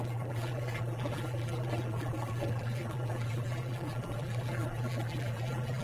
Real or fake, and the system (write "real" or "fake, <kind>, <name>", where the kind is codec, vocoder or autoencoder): fake, vocoder, BigVGAN v2